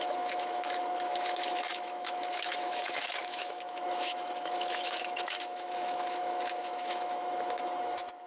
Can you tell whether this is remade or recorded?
remade